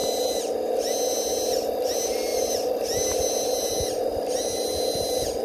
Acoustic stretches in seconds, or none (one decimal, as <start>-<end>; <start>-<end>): 0.0-5.4